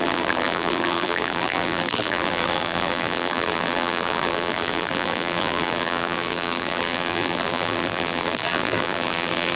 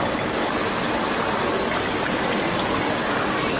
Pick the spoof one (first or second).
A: first